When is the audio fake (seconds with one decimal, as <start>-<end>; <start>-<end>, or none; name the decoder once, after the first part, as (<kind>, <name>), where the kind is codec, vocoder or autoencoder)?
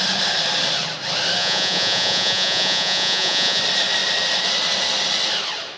1.4-3.6 (vocoder, Vocos)